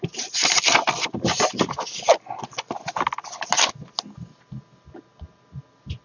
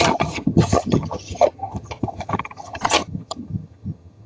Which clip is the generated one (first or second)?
second